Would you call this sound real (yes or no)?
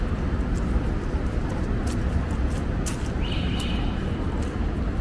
yes